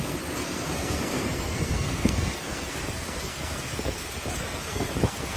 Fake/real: fake